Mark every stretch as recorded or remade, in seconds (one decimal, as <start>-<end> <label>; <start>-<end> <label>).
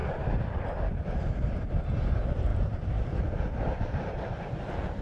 0.0-2.5 recorded; 2.5-4.3 remade; 4.3-5.0 recorded